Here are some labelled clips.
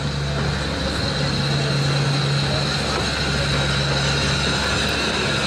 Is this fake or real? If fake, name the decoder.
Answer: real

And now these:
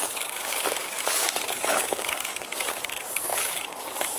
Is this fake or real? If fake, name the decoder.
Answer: fake, codec, DAC